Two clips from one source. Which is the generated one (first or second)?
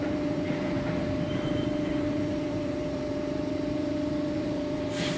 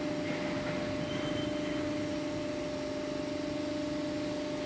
first